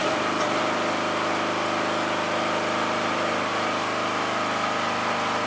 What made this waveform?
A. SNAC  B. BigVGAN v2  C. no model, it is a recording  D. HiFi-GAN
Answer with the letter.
C